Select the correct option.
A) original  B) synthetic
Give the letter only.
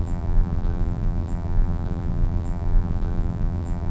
B